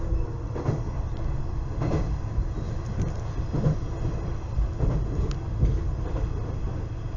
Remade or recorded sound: recorded